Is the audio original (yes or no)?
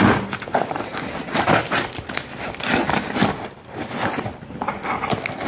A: yes